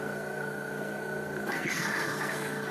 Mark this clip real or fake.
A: fake